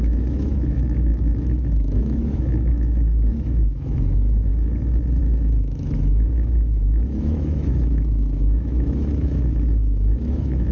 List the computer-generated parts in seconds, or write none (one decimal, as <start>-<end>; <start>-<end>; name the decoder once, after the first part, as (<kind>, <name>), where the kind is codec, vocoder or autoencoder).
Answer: 0.0-4.5 (autoencoder, DAC-VAE); 5.2-10.7